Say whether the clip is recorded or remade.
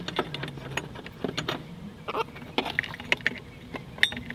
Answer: recorded